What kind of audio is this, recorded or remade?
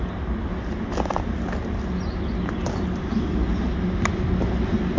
recorded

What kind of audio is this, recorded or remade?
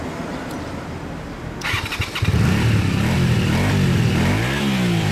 recorded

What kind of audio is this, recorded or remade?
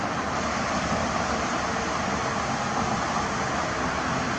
recorded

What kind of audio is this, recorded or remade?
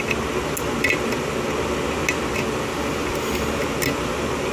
recorded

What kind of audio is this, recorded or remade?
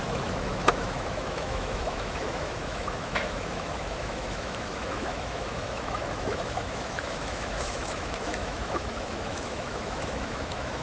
remade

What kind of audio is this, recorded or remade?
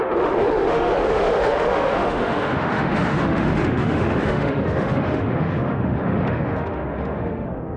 remade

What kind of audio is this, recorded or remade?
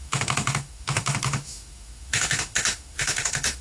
remade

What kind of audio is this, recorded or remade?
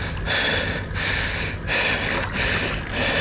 recorded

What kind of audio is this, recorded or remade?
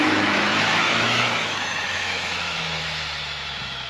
remade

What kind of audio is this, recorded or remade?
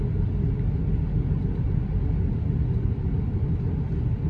recorded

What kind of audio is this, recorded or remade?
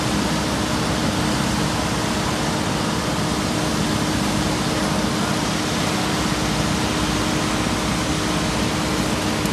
recorded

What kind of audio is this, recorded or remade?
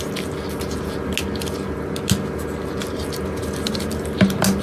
recorded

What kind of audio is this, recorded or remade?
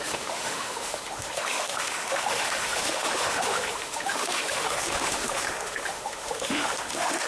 remade